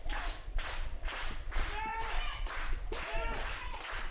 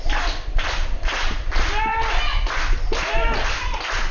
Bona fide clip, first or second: second